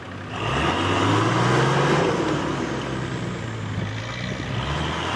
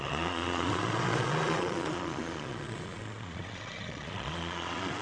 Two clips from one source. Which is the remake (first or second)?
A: second